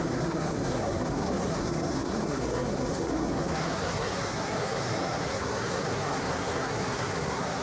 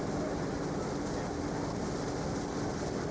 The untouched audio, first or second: second